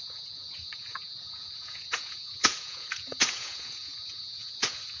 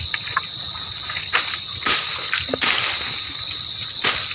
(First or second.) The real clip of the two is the second